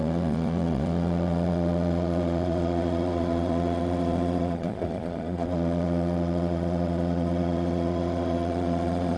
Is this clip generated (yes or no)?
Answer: yes